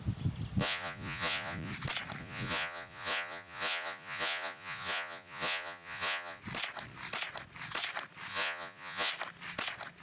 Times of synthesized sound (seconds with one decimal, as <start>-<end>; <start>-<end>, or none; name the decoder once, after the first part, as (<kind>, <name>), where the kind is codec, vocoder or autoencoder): 0.6-1.7 (vocoder, Vocos); 2.2-6.4; 8.3-9.1